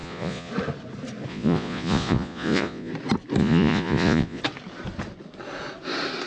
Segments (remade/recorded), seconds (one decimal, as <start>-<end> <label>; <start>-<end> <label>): 0.0-0.5 remade; 0.5-1.3 recorded; 1.3-2.9 remade; 2.9-3.4 recorded; 3.4-4.4 remade; 4.4-6.3 recorded

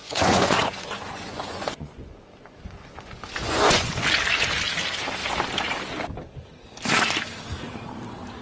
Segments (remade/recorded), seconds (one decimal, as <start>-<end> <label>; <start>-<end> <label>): 0.0-3.9 remade; 3.9-8.4 recorded